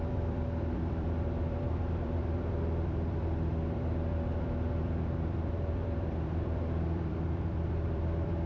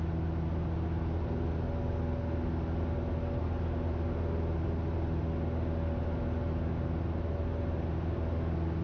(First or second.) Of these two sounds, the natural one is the second